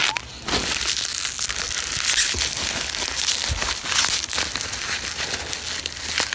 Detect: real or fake real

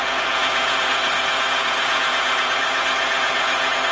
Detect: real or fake fake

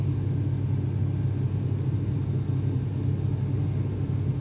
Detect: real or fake real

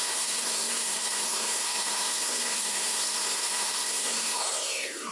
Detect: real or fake fake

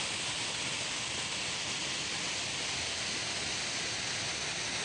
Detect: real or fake real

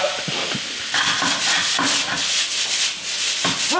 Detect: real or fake real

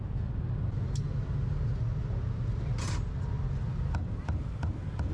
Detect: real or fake real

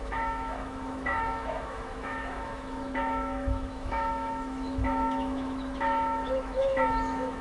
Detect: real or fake fake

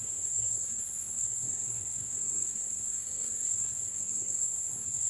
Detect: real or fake fake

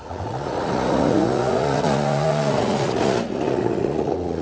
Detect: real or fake fake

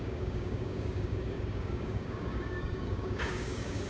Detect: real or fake fake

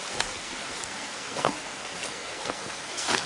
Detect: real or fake fake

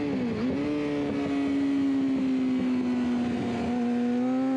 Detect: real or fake real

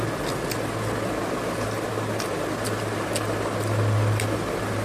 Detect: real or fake real